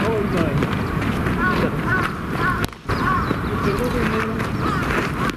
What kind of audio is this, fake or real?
fake